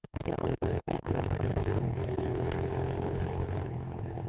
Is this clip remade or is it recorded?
remade